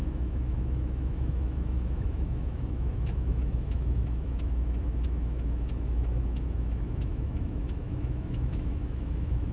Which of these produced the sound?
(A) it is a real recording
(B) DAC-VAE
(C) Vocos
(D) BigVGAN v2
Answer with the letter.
B